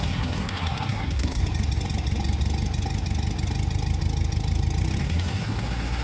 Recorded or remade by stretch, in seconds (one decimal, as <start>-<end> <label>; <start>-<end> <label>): 0.0-1.4 remade; 1.4-5.0 recorded; 5.0-6.0 remade

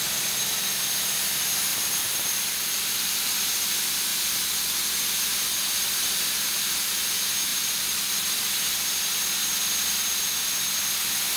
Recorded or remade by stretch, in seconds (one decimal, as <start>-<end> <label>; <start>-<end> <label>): 0.0-1.7 recorded; 1.7-3.3 remade; 3.3-7.5 recorded; 7.5-8.1 remade; 8.1-11.4 recorded

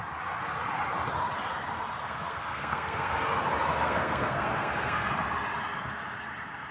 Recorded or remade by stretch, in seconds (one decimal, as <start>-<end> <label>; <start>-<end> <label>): 0.0-2.0 recorded; 2.0-3.1 remade; 3.1-3.7 recorded; 3.7-5.1 remade; 5.1-6.7 recorded

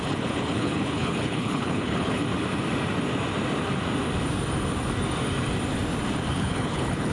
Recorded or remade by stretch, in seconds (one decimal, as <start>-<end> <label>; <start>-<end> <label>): 0.0-2.2 remade; 2.2-6.3 recorded; 6.3-7.1 remade

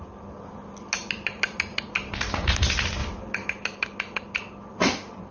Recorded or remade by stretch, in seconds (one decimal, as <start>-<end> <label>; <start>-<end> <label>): 0.0-5.3 recorded

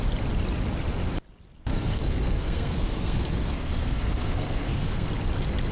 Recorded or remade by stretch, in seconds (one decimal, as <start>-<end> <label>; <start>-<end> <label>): 0.0-1.7 recorded; 1.7-5.1 remade; 5.1-5.7 recorded